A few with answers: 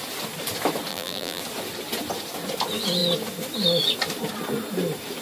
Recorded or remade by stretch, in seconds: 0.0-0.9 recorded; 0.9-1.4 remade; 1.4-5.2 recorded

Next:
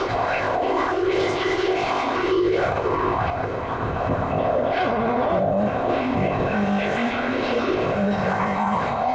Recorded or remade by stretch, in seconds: 0.0-4.8 remade; 4.8-5.4 recorded; 5.4-9.1 remade

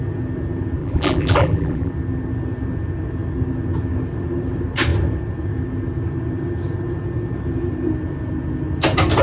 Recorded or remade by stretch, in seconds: 0.0-0.8 recorded; 0.8-1.9 remade; 1.9-9.2 recorded

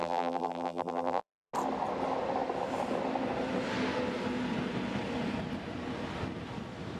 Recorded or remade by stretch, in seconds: 0.0-1.5 remade; 1.5-7.0 recorded

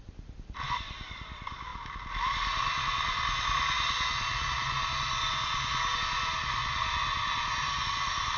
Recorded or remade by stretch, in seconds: 0.0-1.7 remade; 1.7-6.0 recorded; 6.0-6.6 remade; 6.6-7.8 recorded; 7.8-8.4 remade

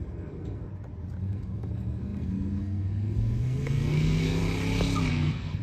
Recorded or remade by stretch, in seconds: 0.0-0.7 remade; 0.7-1.2 recorded; 1.2-4.4 remade; 4.4-5.1 recorded; 5.1-5.6 remade

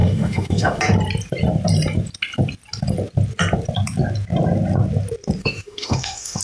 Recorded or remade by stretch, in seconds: 0.0-0.8 remade; 0.8-5.4 recorded; 5.4-6.4 remade